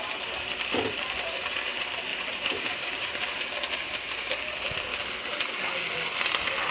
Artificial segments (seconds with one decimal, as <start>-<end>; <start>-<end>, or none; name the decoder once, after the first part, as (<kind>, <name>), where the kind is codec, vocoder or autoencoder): 2.1-3.4 (vocoder, BigVGAN v2)